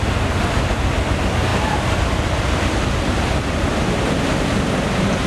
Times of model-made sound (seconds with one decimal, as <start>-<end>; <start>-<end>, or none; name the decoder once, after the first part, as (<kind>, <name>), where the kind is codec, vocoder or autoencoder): 1.5-4.7 (vocoder, BigVGAN v2)